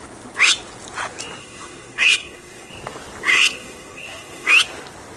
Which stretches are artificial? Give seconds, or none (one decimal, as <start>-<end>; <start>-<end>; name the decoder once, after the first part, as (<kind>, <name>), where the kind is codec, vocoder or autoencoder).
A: 1.4-2.7 (codec, SNAC); 3.3-4.5